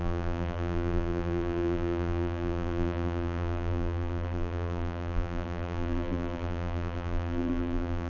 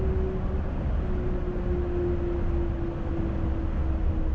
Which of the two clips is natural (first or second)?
second